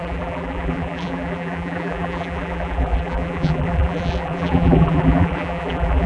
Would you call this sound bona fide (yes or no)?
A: no